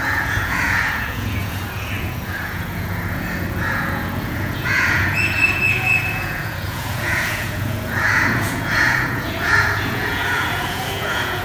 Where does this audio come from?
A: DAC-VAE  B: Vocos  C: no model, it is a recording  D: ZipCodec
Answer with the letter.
B